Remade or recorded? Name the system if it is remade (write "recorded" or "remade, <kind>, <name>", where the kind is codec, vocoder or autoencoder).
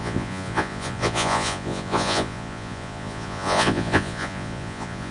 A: remade, vocoder, Vocos